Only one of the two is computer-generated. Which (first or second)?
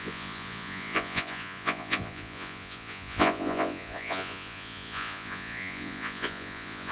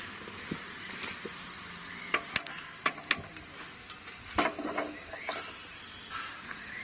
first